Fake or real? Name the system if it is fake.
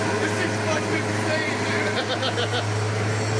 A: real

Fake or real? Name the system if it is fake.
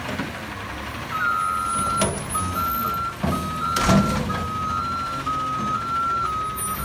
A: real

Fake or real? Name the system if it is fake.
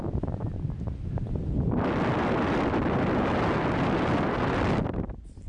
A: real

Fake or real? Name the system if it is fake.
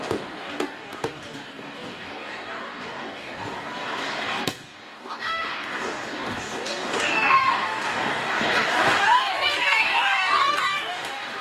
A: fake, codec, DAC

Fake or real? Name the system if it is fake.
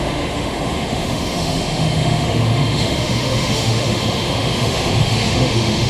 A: fake, autoencoder, DAC-VAE